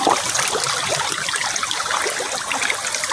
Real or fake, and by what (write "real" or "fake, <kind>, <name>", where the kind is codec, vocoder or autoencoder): real